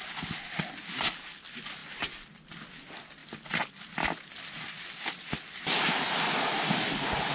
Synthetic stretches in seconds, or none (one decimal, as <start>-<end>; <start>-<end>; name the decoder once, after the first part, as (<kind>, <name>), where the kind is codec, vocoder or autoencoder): none